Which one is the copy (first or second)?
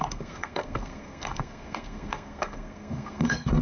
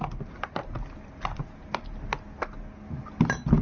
first